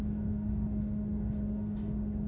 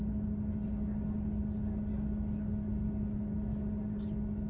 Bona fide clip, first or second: second